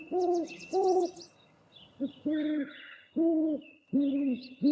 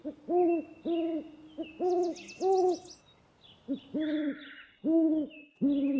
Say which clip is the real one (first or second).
second